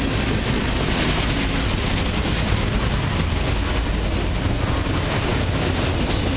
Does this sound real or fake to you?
real